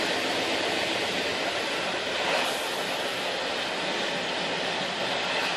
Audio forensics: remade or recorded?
recorded